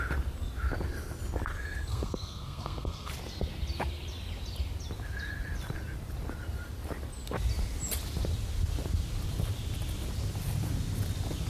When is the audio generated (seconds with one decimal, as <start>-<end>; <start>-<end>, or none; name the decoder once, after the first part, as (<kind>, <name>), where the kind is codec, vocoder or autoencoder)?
1.9-3.1 (codec, SNAC)